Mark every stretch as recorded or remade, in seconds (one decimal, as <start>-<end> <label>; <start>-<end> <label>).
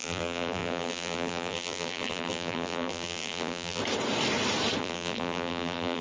0.0-3.8 remade; 3.8-4.8 recorded; 4.8-6.0 remade